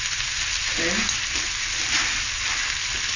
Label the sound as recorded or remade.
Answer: recorded